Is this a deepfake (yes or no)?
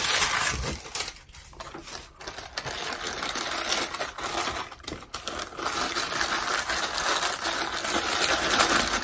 no